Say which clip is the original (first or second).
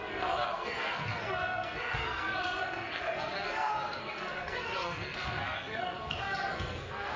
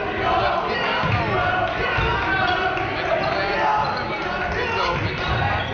second